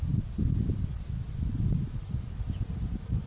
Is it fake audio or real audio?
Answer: real